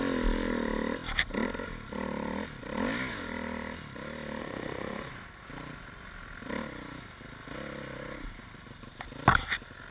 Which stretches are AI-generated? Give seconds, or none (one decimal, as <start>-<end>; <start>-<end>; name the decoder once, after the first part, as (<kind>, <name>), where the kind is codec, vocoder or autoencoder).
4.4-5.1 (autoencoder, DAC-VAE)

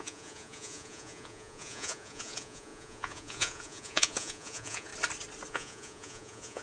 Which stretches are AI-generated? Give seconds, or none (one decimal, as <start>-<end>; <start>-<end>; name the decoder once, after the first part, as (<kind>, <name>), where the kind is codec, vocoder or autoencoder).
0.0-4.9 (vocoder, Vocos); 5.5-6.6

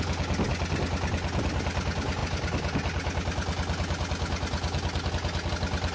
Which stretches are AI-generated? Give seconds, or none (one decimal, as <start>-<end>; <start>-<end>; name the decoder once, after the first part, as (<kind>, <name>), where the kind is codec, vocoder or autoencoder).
none

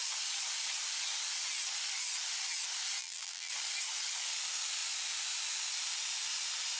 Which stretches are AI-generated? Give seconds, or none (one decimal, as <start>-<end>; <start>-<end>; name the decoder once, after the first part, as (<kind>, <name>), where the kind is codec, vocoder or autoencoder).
3.0-3.5 (vocoder, BigVGAN v2)